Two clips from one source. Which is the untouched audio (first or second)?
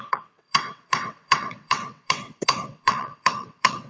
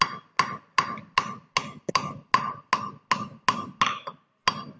second